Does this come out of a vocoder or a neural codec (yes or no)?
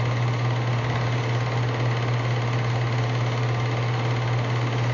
no